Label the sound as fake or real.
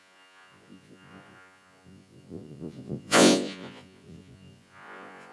fake